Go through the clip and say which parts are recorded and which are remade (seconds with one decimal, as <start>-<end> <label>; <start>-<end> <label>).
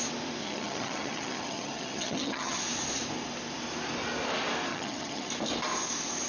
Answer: 0.0-0.4 recorded; 0.4-2.6 remade; 2.6-4.7 recorded; 4.7-5.3 remade; 5.3-6.3 recorded